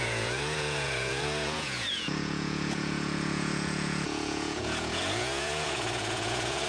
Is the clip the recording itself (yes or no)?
no